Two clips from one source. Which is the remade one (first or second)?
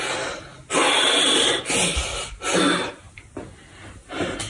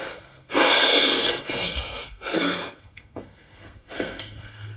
second